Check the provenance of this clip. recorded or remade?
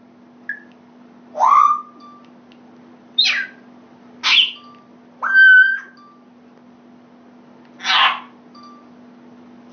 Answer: recorded